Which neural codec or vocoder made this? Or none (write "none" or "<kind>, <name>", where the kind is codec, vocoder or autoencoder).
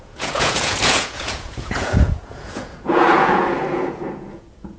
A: vocoder, Vocos